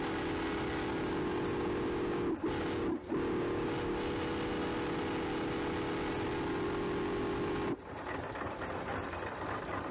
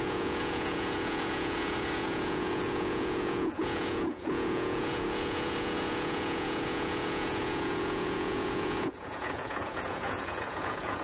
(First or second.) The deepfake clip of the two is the second